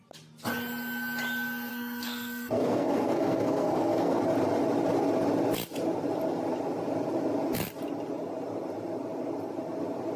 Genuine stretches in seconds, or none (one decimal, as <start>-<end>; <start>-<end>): 0.0-1.7; 4.2-10.2